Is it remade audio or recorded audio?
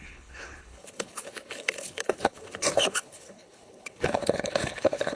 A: remade